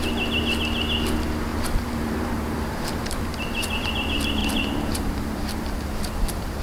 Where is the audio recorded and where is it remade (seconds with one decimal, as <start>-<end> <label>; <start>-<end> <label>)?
0.0-1.5 recorded; 1.5-3.9 remade; 3.9-4.4 recorded; 4.4-6.6 remade

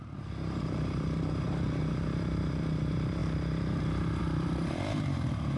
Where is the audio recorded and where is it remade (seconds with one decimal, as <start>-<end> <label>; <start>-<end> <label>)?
0.0-5.6 remade

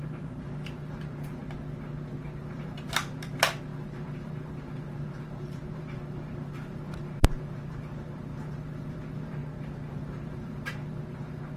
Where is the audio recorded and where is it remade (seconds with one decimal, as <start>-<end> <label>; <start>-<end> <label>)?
0.0-1.4 remade; 1.4-2.4 recorded; 2.4-9.4 remade; 9.4-9.9 recorded; 9.9-11.6 remade